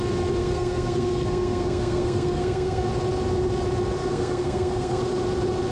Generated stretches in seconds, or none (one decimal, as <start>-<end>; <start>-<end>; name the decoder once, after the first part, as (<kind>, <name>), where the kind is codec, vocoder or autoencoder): 0.4-2.9 (codec, SNAC); 4.0-5.0